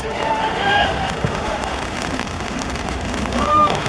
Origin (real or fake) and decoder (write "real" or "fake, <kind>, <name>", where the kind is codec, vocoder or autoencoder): fake, autoencoder, DAC-VAE